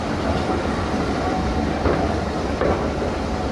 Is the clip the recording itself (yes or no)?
no